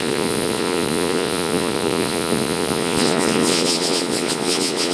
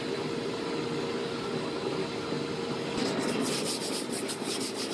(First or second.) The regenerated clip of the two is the first